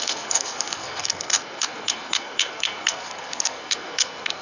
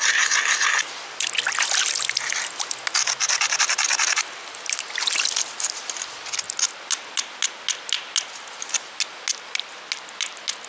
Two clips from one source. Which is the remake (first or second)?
first